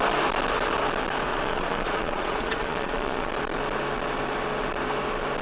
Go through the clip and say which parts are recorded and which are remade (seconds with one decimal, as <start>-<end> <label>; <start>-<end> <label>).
0.0-1.3 recorded; 1.3-3.3 remade; 3.3-5.4 recorded